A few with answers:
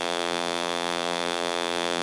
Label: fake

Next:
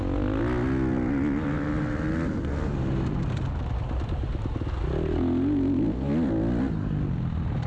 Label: real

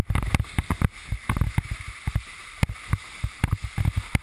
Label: real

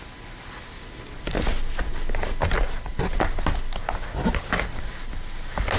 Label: real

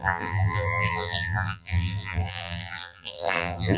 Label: fake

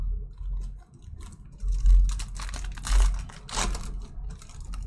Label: real